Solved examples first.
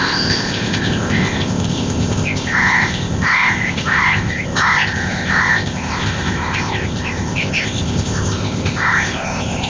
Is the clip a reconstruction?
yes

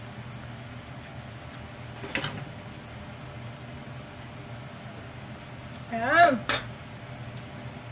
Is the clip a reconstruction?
no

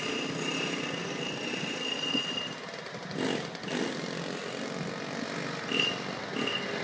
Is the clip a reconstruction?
no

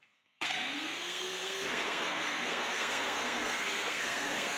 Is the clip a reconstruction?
yes